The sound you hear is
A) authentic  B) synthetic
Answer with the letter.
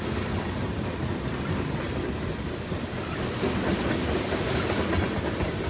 A